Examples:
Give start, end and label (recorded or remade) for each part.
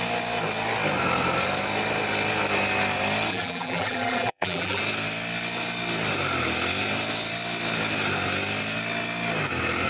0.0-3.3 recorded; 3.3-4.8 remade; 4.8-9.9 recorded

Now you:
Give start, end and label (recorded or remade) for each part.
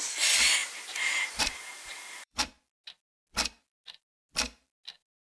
0.0-0.6 recorded; 0.6-2.4 remade; 2.4-5.2 recorded